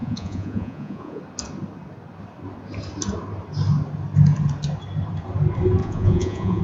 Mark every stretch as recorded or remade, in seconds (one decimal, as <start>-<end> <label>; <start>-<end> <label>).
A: 0.0-1.2 remade; 1.2-5.8 recorded; 5.8-6.6 remade